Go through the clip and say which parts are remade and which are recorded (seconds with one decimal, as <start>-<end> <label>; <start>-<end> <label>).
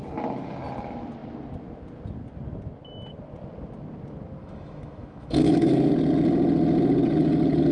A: 0.0-4.4 recorded; 4.4-5.9 remade; 5.9-7.7 recorded